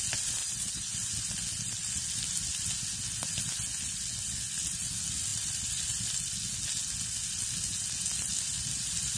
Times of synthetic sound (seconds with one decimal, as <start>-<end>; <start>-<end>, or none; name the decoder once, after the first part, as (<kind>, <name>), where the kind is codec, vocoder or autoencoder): 0.4-0.9 (vocoder, Vocos)